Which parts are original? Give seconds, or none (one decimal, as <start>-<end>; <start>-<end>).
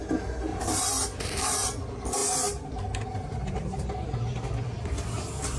0.0-4.3